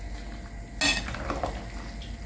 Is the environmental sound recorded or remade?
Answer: recorded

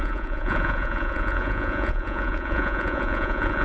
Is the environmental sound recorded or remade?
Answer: remade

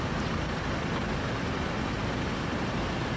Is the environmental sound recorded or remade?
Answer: recorded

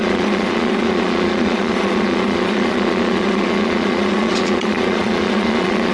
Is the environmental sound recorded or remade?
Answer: remade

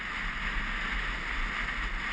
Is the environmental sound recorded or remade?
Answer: recorded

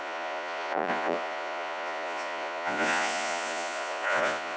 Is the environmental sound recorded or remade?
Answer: remade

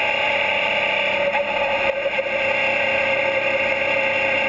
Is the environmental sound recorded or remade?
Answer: recorded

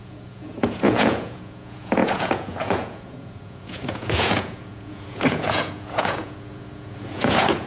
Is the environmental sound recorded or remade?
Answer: remade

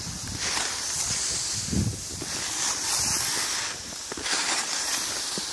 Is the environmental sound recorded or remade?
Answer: recorded